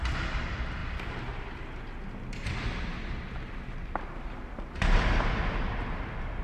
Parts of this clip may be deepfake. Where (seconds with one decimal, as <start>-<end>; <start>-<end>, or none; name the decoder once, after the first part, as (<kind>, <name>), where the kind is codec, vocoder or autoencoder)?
none

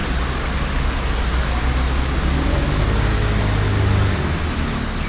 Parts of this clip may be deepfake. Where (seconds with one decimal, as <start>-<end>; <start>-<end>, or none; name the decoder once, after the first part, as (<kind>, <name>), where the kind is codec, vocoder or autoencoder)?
none

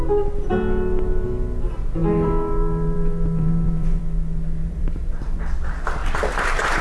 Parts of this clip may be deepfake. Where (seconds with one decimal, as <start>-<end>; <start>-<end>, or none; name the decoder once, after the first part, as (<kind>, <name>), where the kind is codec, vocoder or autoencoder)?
2.0-4.0 (vocoder, BigVGAN v2); 4.6-5.4; 6.0-6.8

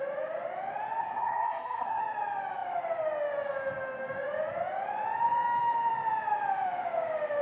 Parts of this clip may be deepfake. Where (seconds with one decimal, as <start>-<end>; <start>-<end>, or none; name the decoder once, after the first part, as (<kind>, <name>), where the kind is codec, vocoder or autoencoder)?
1.0-2.0 (codec, SNAC)

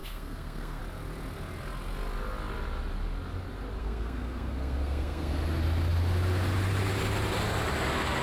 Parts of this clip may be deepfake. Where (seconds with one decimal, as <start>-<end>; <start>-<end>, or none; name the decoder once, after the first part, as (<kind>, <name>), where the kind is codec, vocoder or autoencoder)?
0.0-0.8 (codec, SNAC); 3.8-5.3